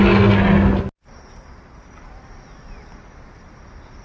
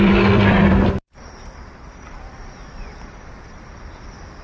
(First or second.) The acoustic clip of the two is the first